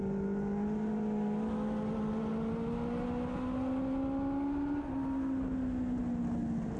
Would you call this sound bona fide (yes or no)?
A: yes